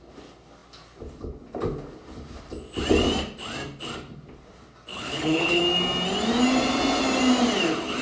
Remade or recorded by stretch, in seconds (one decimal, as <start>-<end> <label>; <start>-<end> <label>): 0.0-4.9 recorded; 4.9-5.6 remade; 5.6-8.0 recorded